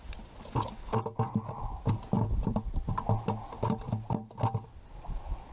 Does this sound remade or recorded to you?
recorded